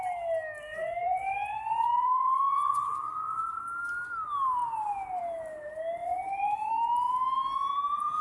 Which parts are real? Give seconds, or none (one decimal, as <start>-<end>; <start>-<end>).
0.0-0.7; 3.6-6.0; 6.7-8.2